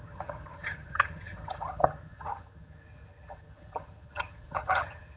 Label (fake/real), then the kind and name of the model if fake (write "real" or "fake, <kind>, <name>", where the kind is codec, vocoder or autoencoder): fake, vocoder, HiFi-GAN